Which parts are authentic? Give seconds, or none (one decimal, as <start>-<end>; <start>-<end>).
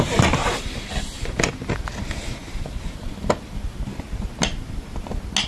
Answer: 0.0-0.4; 1.5-5.5